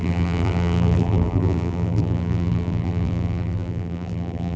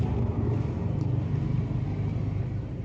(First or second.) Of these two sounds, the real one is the second